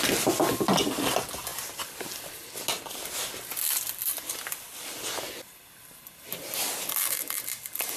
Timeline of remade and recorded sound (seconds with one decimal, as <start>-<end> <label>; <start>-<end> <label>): 0.0-8.0 recorded